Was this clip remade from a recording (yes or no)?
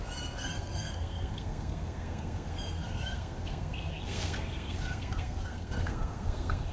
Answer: yes